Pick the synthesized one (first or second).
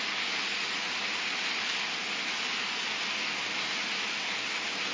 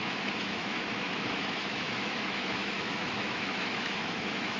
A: second